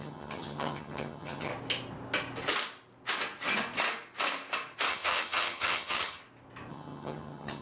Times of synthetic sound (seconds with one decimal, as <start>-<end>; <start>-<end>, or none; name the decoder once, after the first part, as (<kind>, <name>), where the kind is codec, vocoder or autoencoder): 0.0-1.5 (vocoder, HiFi-GAN); 4.9-6.2; 6.7-7.6